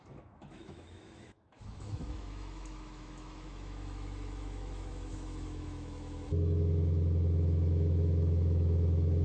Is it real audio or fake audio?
fake